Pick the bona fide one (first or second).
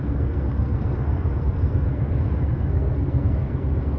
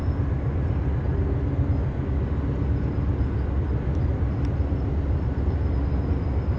second